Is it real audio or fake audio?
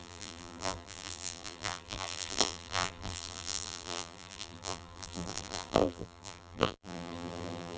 fake